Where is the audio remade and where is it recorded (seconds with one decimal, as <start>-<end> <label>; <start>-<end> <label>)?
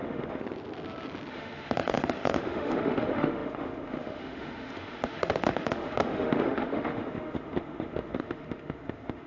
0.0-0.4 remade; 0.4-1.3 recorded; 1.3-9.3 remade